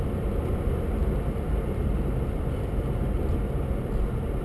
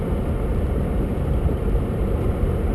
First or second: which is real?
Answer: first